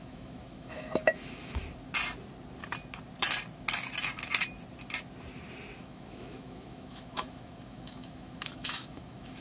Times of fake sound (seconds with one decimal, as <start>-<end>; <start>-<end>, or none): 0.0-1.6; 5.8-9.4